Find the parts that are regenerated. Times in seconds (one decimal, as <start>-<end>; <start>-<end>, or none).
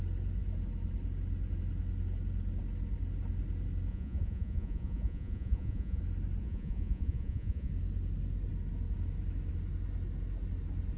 3.9-6.0; 6.4-7.7